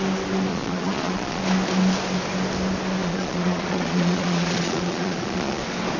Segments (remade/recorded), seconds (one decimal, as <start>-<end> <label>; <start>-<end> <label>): 0.0-0.5 recorded; 0.5-1.4 remade; 1.4-3.0 recorded; 3.0-5.6 remade; 5.6-6.0 recorded